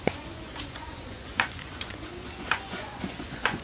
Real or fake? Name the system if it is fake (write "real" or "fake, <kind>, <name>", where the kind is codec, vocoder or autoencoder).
fake, vocoder, Vocos